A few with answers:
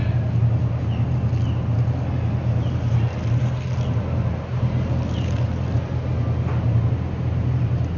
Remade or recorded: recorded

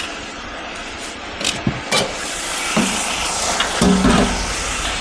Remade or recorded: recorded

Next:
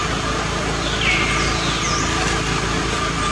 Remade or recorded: recorded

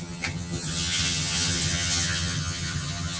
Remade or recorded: remade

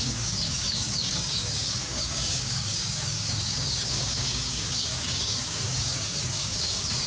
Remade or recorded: remade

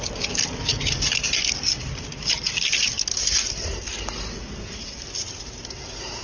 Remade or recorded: recorded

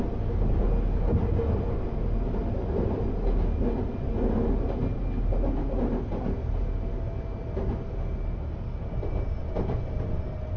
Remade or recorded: recorded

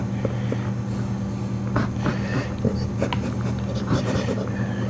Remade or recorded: recorded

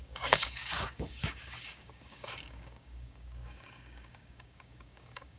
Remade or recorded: remade